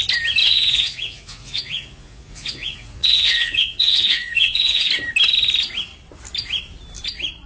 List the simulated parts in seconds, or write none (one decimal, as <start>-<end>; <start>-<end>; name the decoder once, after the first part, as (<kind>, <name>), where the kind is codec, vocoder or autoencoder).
0.4-4.9 (vocoder, Vocos)